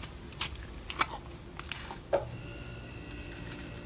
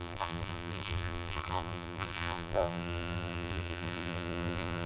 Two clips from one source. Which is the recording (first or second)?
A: first